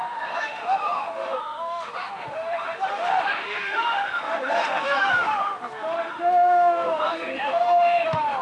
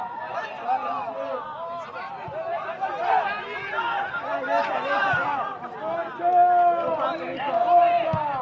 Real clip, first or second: second